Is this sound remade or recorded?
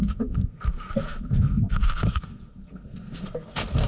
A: remade